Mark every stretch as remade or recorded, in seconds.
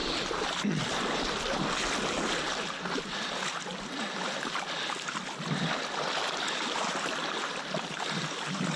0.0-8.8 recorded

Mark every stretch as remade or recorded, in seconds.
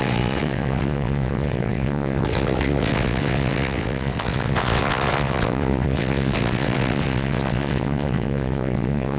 0.0-9.2 remade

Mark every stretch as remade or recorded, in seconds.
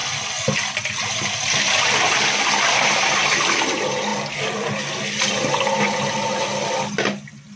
0.0-2.8 recorded; 2.8-4.1 remade; 4.1-7.6 recorded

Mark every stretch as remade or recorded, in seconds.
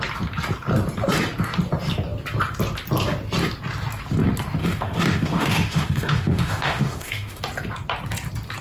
0.0-4.6 recorded; 4.6-7.4 remade; 7.4-8.6 recorded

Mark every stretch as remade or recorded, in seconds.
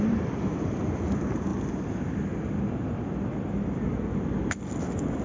0.0-5.2 recorded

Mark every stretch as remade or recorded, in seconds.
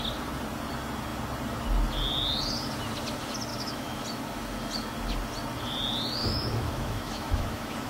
0.0-3.5 recorded; 3.5-4.0 remade; 4.0-6.2 recorded; 6.2-7.9 remade